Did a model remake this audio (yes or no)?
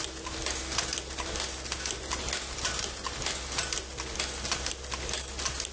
no